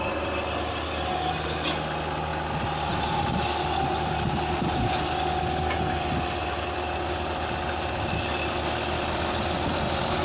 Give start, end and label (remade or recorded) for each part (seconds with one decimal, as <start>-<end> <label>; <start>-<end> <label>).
0.0-10.2 recorded